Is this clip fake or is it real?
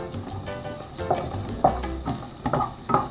real